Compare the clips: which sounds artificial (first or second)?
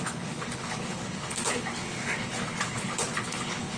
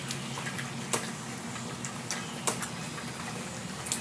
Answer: first